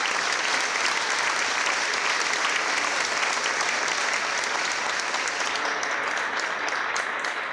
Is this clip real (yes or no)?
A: yes